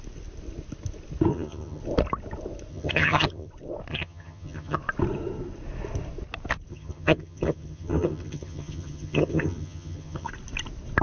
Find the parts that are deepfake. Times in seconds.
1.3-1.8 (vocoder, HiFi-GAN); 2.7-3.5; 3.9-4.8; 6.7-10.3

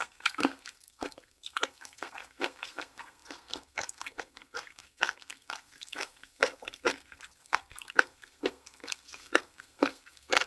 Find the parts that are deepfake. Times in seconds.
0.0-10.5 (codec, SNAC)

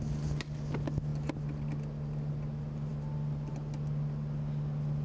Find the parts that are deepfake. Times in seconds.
none

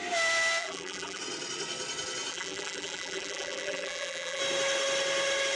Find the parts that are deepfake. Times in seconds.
0.6-1.2 (vocoder, BigVGAN v2); 2.3-4.4